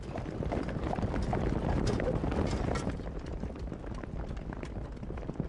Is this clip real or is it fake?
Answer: real